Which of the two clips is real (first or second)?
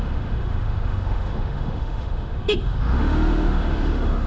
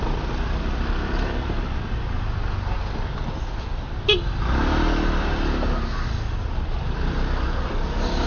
second